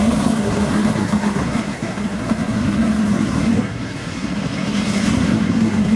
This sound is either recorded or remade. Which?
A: remade